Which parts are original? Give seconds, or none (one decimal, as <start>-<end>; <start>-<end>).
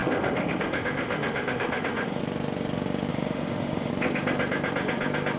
2.2-3.1; 3.9-5.4